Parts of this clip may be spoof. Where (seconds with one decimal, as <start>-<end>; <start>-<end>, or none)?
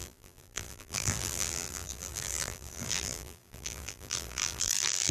0.0-5.1